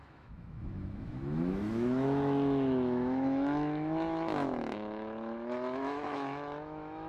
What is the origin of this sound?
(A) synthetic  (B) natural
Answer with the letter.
A